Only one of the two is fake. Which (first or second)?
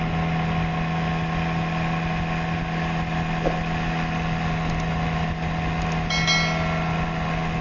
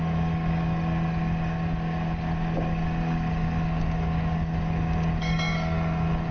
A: second